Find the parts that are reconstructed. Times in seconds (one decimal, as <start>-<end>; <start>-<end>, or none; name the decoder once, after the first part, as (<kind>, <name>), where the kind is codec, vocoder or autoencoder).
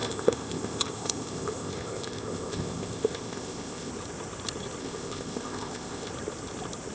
0.0-3.9 (codec, ZipCodec); 4.8-6.1